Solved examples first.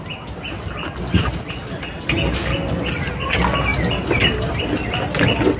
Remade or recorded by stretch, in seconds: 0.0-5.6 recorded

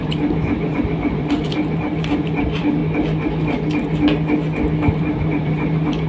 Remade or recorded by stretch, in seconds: 0.0-2.8 remade; 2.8-5.0 recorded; 5.0-6.1 remade

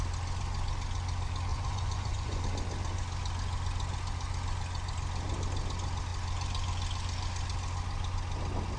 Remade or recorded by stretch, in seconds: 0.0-1.5 recorded; 1.5-2.4 remade; 2.4-8.8 recorded

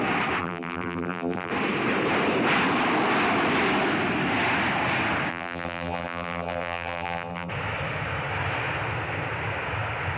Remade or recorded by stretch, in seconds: 0.0-0.4 recorded; 0.4-1.5 remade; 1.5-5.3 recorded; 5.3-7.5 remade; 7.5-10.2 recorded

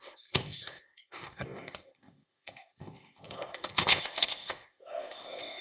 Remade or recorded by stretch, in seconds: 0.0-5.6 remade

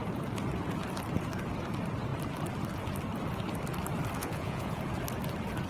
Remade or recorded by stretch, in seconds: 0.0-4.2 recorded; 4.2-4.8 remade; 4.8-5.7 recorded

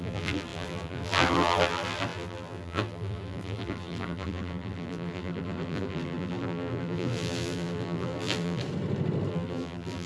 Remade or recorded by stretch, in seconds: 0.0-8.6 remade; 8.6-9.3 recorded; 9.3-10.1 remade

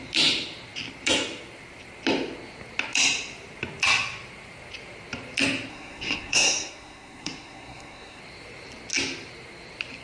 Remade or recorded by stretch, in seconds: 0.0-5.7 recorded; 5.7-8.2 remade; 8.2-10.0 recorded